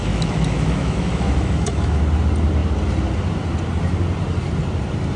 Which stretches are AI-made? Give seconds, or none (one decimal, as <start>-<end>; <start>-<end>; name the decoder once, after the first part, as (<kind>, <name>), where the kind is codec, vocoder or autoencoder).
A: 0.0-2.0 (autoencoder, DAC-VAE)